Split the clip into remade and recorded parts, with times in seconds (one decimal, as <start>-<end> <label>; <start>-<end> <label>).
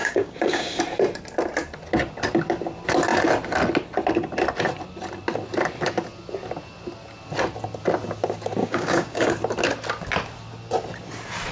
0.0-0.8 remade; 0.8-8.6 recorded; 8.6-9.3 remade; 9.3-11.5 recorded